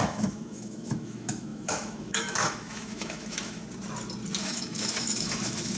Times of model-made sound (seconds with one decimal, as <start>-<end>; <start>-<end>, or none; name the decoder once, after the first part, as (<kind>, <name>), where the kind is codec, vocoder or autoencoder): 0.0-3.6 (autoencoder, DAC-VAE); 4.4-5.8